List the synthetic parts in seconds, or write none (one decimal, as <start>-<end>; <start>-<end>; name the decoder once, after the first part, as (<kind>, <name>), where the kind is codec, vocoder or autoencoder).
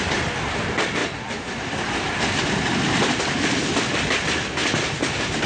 none